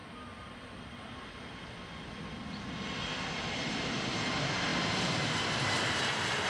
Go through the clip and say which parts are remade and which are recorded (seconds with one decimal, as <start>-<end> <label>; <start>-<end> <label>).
0.0-3.5 recorded; 3.5-6.5 remade